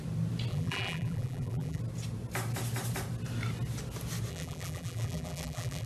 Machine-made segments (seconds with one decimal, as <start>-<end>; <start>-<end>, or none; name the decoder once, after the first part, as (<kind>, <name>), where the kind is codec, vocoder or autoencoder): 0.5-1.8 (vocoder, BigVGAN v2); 4.3-5.9